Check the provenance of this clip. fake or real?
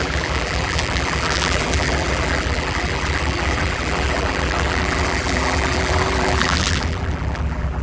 fake